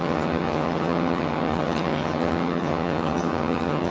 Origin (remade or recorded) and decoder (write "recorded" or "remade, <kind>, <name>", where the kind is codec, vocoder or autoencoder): remade, vocoder, HiFi-GAN